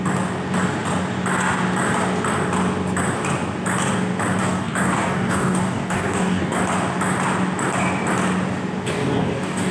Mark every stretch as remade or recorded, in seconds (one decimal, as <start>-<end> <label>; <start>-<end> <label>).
0.0-4.4 recorded; 4.4-6.6 remade; 6.6-8.8 recorded; 8.8-9.7 remade